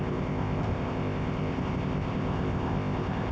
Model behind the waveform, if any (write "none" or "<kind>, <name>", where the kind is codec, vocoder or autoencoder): codec, ZipCodec